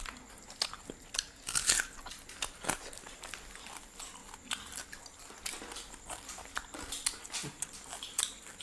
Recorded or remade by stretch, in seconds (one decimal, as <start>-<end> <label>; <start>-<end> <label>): 0.0-8.6 recorded